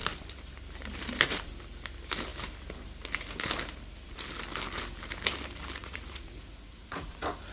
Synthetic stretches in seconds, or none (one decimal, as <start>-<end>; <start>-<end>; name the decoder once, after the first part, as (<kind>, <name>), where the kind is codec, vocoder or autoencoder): 5.8-7.1 (vocoder, Vocos)